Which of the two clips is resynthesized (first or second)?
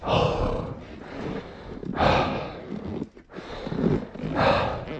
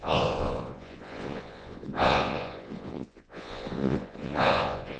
second